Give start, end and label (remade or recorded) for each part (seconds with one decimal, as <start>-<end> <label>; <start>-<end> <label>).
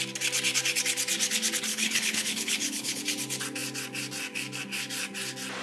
0.0-1.7 recorded; 1.7-3.0 remade; 3.0-5.6 recorded